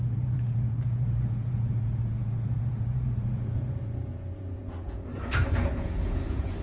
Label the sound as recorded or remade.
remade